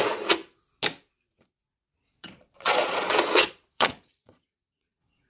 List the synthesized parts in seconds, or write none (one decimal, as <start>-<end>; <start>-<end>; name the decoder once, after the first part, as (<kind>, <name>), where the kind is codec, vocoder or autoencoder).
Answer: 2.1-5.3 (vocoder, Vocos)